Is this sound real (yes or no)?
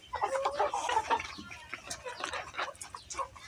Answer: yes